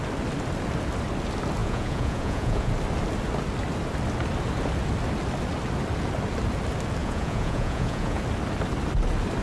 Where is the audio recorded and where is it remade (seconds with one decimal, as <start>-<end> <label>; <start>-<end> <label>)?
0.0-1.6 recorded; 1.6-2.7 remade; 2.7-7.0 recorded; 7.0-8.2 remade; 8.2-9.4 recorded